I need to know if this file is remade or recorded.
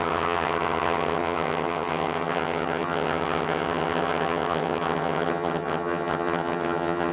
remade